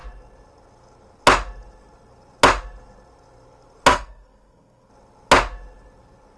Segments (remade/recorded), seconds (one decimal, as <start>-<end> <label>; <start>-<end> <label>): 0.0-3.9 recorded; 3.9-4.9 remade; 4.9-6.4 recorded